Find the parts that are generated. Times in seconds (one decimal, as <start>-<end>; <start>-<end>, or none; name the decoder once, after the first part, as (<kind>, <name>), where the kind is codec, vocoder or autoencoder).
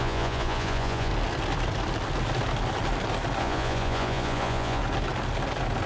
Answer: 0.0-1.1 (vocoder, Vocos); 3.4-4.8